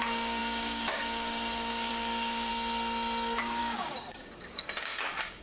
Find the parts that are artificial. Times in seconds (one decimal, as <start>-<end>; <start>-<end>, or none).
0.0-2.5; 3.6-5.4